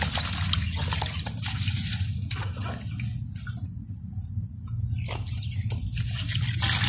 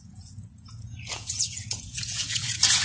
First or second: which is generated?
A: second